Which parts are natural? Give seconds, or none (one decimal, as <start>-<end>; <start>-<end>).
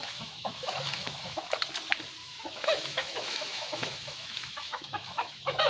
1.6-2.2